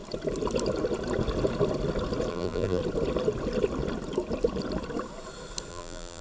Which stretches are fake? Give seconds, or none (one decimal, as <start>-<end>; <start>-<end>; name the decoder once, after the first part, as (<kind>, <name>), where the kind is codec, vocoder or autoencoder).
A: 2.3-2.8 (vocoder, BigVGAN v2); 5.7-6.2